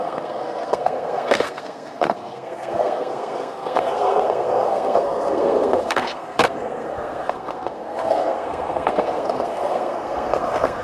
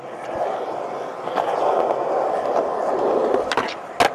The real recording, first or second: second